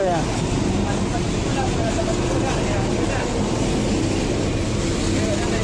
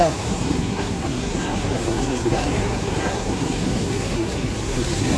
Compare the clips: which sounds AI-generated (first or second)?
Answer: second